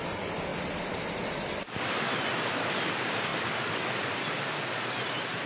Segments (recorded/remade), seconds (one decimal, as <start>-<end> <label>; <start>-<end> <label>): 0.0-3.3 recorded; 3.3-4.1 remade; 4.1-5.5 recorded